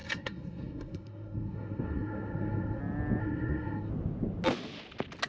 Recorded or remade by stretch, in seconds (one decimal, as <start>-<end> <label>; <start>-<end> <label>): 0.0-2.8 remade; 2.8-3.2 recorded; 3.2-3.9 remade; 3.9-5.3 recorded